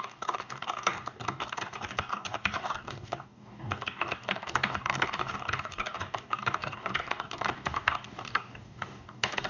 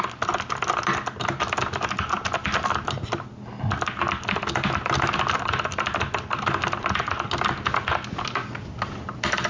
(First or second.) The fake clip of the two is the first